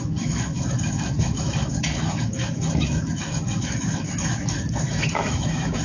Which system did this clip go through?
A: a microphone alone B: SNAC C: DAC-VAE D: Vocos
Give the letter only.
C